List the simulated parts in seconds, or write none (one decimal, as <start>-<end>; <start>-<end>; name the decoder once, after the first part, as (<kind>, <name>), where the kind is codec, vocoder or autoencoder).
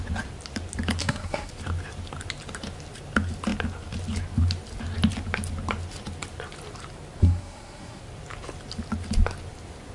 1.0-1.5 (codec, SNAC); 7.2-8.0